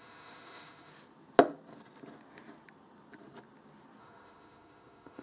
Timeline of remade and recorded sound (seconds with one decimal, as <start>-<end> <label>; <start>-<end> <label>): 0.0-0.9 remade; 0.9-4.0 recorded; 4.0-5.2 remade